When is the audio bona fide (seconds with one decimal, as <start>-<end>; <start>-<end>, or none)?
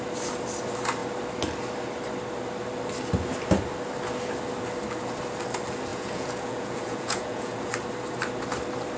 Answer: 0.0-5.9; 7.7-9.0